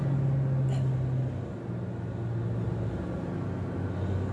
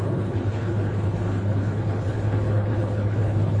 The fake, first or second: second